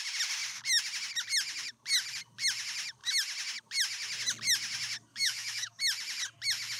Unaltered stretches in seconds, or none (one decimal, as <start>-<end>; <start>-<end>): 0.0-5.1; 5.8-6.8